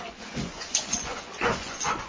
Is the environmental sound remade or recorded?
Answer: remade